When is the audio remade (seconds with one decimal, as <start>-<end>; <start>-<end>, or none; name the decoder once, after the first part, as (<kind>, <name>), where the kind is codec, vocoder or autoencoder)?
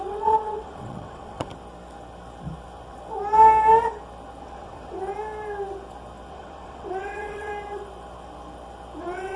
0.0-1.5 (vocoder, WaveNeXt); 4.4-5.1; 6.3-7.5; 9.0-9.4